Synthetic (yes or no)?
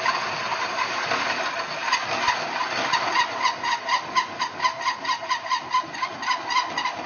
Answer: no